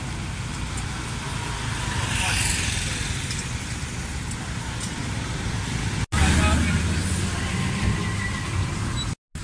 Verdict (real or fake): real